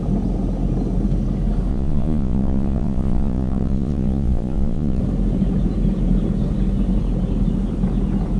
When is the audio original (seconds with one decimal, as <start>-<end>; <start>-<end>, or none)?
0.0-1.7; 5.0-8.4